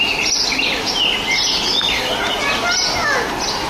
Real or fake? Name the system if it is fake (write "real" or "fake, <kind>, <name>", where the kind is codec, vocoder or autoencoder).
real